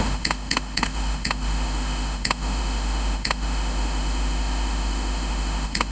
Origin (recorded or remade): remade